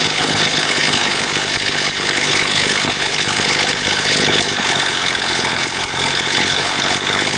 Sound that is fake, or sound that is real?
fake